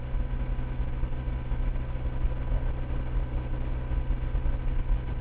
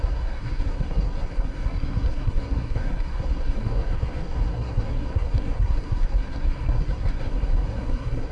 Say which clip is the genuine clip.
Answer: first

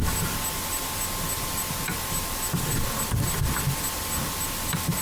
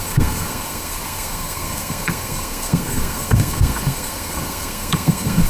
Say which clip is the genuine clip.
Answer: first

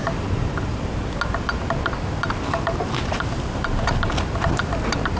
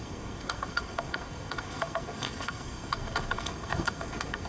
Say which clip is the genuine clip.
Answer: first